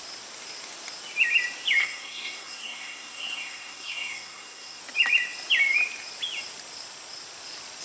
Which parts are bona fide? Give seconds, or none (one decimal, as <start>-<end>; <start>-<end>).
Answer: 0.0-1.8; 4.8-7.8